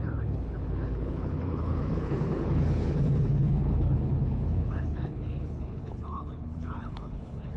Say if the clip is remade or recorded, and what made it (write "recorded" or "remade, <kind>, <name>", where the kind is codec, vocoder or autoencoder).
remade, codec, HILCodec